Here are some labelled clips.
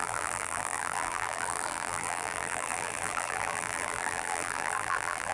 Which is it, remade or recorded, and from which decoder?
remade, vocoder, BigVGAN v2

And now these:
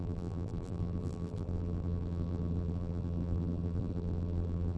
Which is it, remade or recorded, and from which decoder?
remade, vocoder, BigVGAN v2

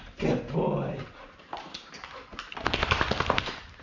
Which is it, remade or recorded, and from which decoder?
remade, vocoder, BigVGAN v2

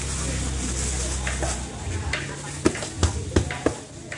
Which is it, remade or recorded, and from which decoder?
recorded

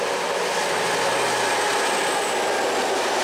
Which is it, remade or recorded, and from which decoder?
recorded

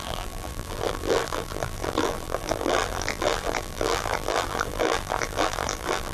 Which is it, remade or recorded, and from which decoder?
remade, vocoder, BigVGAN v2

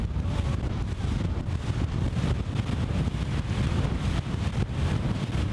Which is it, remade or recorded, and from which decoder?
remade, vocoder, BigVGAN v2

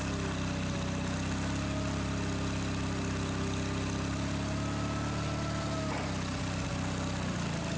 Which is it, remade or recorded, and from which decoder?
recorded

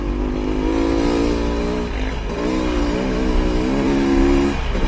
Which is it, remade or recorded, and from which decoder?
recorded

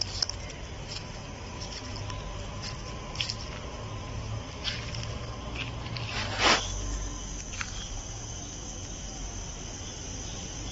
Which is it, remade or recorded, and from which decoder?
recorded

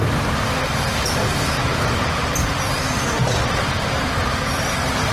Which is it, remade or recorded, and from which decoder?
remade, vocoder, BigVGAN v2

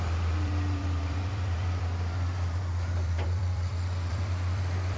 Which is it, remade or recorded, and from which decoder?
remade, vocoder, BigVGAN v2